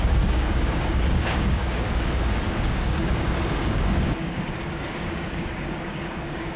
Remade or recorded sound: remade